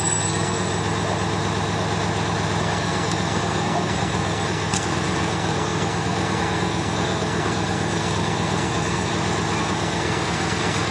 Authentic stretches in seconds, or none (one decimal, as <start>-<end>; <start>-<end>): 0.7-2.6; 9.1-9.6